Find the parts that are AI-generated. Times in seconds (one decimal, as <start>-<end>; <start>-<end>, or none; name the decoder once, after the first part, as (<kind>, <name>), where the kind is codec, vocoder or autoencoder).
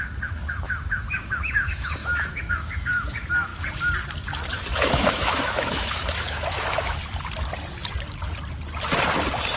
0.0-3.5 (autoencoder, DAC-VAE); 4.7-7.0